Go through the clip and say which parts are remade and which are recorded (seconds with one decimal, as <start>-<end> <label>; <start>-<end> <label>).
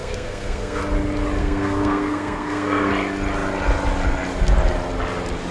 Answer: 0.0-0.8 remade; 0.8-1.4 recorded; 1.4-2.9 remade; 2.9-5.5 recorded